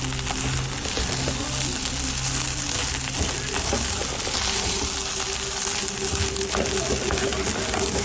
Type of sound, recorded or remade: recorded